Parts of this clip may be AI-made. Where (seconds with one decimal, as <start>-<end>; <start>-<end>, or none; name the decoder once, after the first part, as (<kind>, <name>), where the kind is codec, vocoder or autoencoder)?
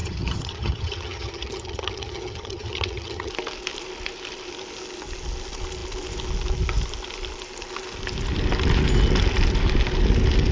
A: 0.0-3.3 (vocoder, HiFi-GAN)